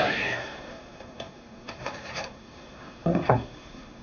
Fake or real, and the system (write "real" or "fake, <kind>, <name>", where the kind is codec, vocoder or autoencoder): fake, codec, SNAC